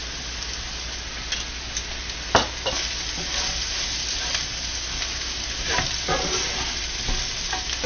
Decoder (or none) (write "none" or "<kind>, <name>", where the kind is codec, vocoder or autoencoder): none